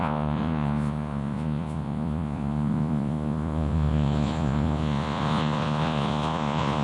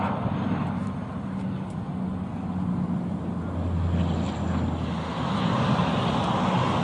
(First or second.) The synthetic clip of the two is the first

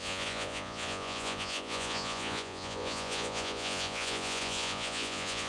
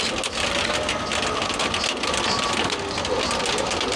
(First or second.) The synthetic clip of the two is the first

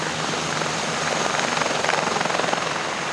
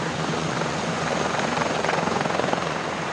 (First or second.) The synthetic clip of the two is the second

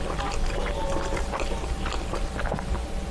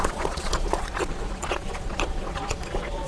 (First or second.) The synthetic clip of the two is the second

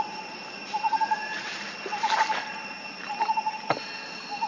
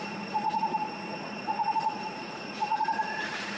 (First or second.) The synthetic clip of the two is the second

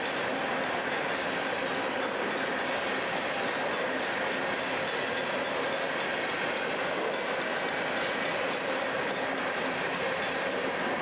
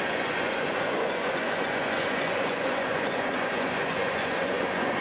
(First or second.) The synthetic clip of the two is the second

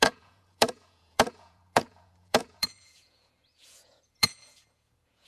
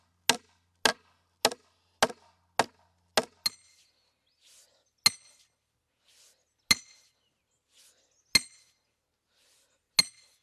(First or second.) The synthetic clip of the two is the first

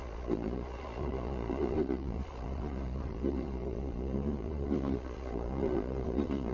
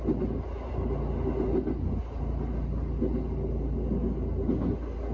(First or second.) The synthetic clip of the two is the first